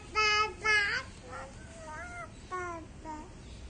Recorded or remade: recorded